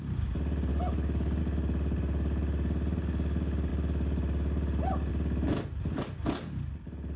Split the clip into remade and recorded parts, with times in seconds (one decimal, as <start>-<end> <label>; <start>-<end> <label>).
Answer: 0.0-0.7 recorded; 0.7-1.4 remade; 1.4-7.2 recorded